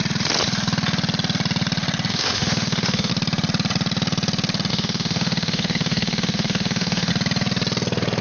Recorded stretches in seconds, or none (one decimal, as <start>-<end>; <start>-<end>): 0.0-2.1; 3.1-4.7; 7.1-8.2